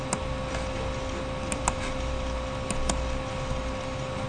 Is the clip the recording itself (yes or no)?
yes